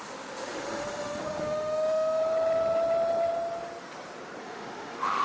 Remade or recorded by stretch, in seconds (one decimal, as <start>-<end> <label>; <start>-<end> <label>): 0.0-2.2 remade; 2.2-4.4 recorded; 4.4-5.2 remade